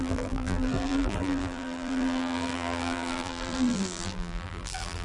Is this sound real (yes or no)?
no